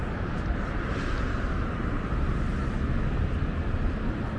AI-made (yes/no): no